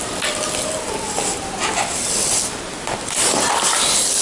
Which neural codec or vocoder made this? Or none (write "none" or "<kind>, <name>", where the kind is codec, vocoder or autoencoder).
none